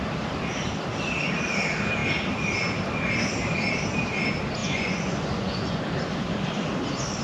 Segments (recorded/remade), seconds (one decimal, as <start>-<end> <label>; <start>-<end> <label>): 0.0-4.6 recorded; 4.6-5.8 remade; 5.8-7.2 recorded